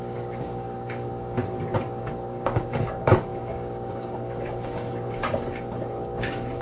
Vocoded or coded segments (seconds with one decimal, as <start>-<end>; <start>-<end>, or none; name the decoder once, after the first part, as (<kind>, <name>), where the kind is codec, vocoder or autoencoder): 0.0-1.4 (codec, DAC); 2.0-6.6